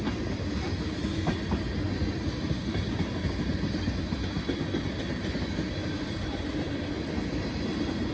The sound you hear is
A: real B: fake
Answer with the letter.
A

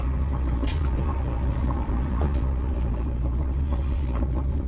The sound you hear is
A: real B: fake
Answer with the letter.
B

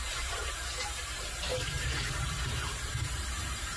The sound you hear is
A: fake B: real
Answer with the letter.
A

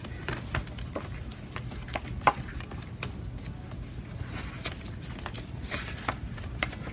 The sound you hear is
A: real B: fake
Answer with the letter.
A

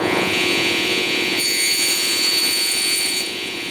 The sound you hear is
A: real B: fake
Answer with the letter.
B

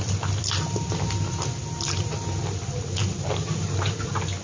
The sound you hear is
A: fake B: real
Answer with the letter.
B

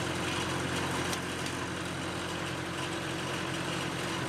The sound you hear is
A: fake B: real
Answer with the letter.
B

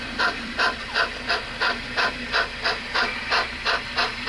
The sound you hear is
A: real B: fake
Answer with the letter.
B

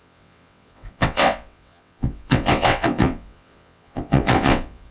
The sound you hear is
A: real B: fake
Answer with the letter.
B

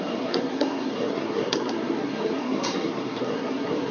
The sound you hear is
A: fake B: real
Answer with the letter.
A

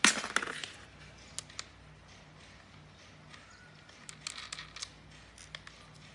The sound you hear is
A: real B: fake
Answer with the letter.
A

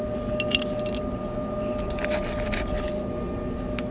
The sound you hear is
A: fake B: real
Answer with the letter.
B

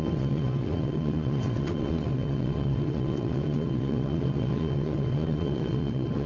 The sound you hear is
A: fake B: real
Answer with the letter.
A